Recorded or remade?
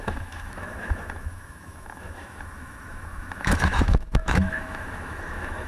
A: remade